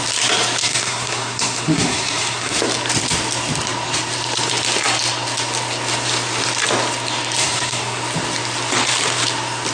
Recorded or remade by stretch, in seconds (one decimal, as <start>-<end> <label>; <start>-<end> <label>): 0.0-0.6 recorded; 0.6-2.6 remade; 2.6-7.4 recorded; 7.4-8.0 remade; 8.0-9.7 recorded